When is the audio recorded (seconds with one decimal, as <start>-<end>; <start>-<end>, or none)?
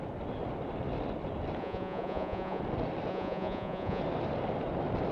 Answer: 0.0-1.6; 2.6-3.1; 4.0-5.1